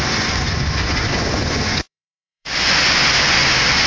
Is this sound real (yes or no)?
no